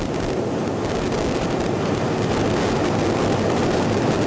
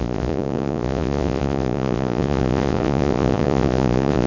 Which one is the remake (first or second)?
second